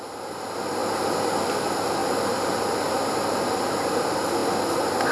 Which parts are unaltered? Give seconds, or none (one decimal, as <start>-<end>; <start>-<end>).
0.0-5.1